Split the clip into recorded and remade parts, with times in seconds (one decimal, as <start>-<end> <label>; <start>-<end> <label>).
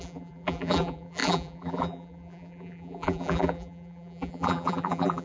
0.0-5.2 remade